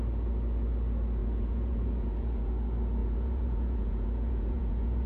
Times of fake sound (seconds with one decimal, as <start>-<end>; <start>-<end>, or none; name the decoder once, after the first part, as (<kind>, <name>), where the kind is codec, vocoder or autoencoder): 1.2-2.5 (vocoder, Vocos); 3.0-5.1